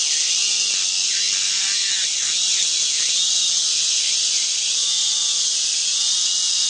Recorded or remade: recorded